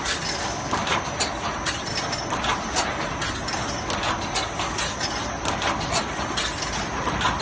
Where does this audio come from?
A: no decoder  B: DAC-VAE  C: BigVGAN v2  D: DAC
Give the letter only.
A